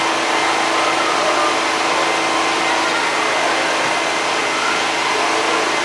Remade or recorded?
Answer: recorded